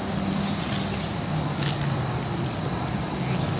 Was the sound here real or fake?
real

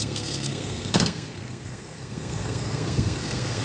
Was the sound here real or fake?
fake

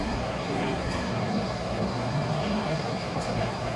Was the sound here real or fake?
fake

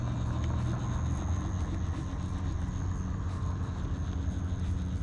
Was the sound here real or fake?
real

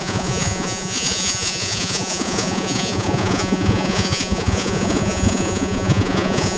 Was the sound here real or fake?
fake